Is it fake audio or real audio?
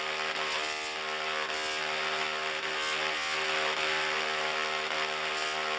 real